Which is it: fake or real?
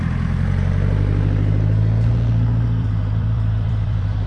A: fake